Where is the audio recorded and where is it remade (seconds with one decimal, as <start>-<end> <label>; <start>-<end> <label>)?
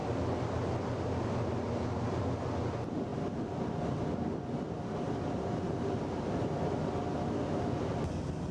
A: 0.0-8.5 recorded